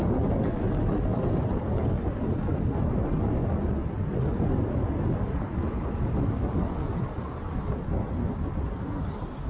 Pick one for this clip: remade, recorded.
recorded